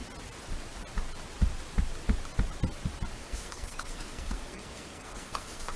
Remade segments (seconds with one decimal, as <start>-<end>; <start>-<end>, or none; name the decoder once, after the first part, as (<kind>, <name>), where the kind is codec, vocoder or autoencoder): 3.2-5.8 (codec, SNAC)